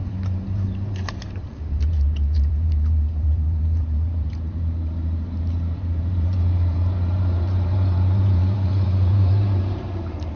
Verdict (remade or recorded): remade